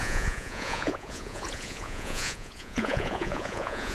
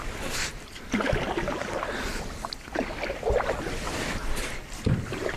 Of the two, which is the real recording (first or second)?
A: second